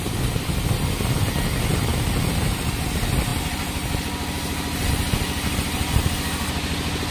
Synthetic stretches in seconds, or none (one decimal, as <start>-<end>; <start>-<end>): 1.9-2.6